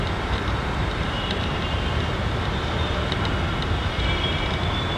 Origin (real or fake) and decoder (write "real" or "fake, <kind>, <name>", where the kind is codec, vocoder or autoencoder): fake, vocoder, BigVGAN v2